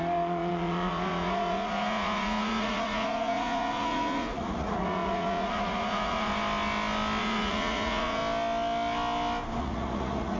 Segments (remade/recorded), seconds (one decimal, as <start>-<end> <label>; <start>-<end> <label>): 0.0-6.3 remade; 6.3-7.2 recorded; 7.2-8.2 remade; 8.2-9.6 recorded; 9.6-10.4 remade